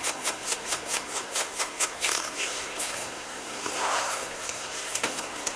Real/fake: fake